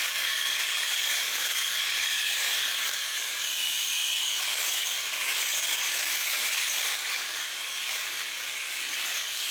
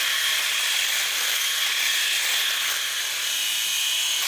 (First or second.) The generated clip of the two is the first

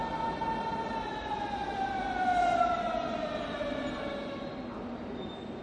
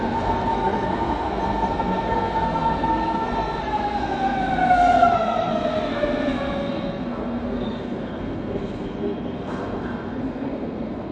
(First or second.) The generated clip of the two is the second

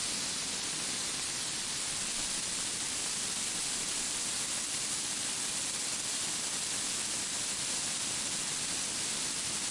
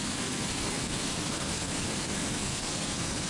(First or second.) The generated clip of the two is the second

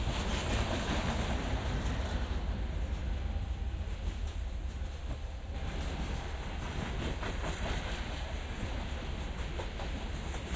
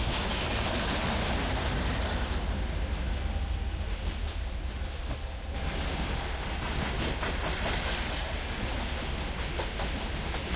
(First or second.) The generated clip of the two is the first